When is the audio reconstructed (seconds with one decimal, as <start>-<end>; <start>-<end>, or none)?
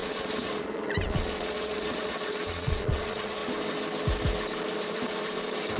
0.0-3.4